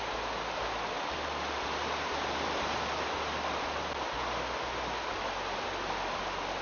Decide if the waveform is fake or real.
real